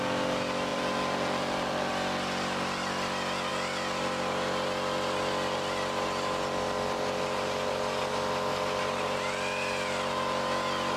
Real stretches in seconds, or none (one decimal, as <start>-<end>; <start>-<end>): 0.0-0.7; 1.9-11.0